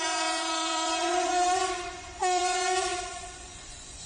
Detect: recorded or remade remade